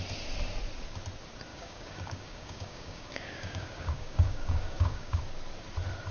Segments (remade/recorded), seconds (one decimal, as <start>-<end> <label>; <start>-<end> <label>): 0.0-1.5 recorded; 1.5-5.2 remade; 5.2-6.1 recorded